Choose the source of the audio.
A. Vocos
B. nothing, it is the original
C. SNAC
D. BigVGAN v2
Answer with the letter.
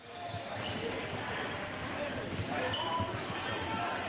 B